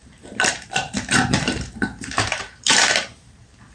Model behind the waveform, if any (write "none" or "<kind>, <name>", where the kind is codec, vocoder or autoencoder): vocoder, BigVGAN v2